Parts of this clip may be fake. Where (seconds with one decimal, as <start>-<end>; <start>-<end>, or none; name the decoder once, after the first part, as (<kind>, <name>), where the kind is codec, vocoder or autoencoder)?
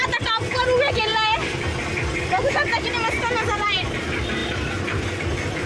none